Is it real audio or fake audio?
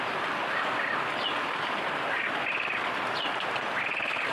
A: real